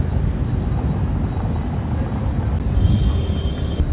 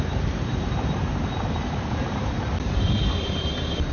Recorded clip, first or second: first